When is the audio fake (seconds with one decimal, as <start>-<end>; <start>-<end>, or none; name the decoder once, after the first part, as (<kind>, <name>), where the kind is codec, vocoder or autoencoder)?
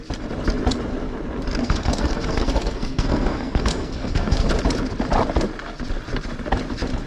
1.6-4.5 (codec, SNAC)